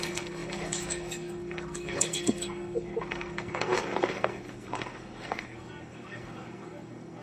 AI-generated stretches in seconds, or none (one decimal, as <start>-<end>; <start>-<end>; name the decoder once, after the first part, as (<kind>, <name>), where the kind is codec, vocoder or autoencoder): 0.0-7.2 (codec, SNAC)